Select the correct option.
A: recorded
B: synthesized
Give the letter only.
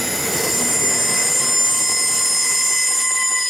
A